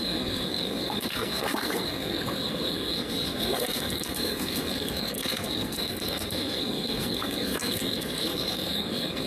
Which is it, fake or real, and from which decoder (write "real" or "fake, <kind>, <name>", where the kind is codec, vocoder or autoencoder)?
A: fake, codec, SNAC